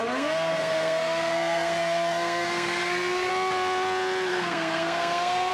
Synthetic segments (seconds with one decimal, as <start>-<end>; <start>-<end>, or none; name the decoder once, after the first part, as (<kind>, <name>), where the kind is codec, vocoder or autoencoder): 0.0-3.3 (codec, SNAC); 4.3-5.5